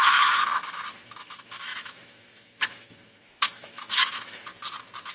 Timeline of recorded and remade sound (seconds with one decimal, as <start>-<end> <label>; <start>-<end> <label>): 0.0-4.5 remade; 4.5-5.1 recorded